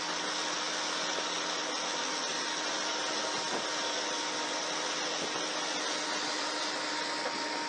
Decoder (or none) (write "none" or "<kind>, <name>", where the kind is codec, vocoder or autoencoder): none